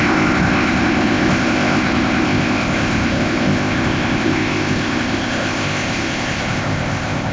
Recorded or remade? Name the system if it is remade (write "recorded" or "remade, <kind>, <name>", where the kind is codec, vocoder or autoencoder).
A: remade, codec, ZipCodec